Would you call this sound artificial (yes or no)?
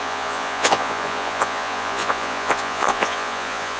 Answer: yes